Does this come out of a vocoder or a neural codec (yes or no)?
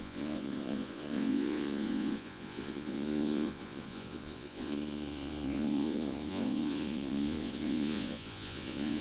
yes